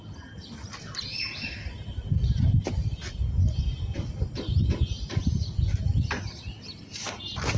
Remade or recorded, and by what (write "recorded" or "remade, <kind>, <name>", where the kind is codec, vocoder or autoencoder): recorded